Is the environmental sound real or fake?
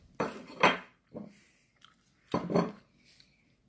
real